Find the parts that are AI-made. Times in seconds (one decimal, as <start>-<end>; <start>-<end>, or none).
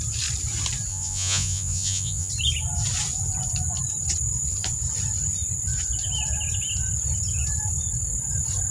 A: 0.9-2.3